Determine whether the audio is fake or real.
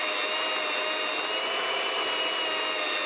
real